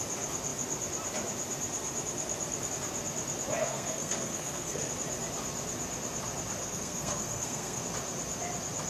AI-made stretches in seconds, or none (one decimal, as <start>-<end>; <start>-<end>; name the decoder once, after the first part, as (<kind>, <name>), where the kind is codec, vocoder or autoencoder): 3.6-4.9 (codec, SNAC); 6.6-7.8